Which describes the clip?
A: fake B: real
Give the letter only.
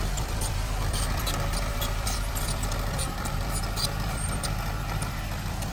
A